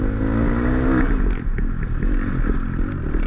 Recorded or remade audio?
recorded